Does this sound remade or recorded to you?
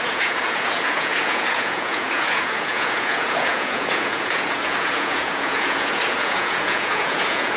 remade